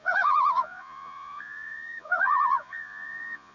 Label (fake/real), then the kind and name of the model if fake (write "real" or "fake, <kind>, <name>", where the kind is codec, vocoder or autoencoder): fake, vocoder, Vocos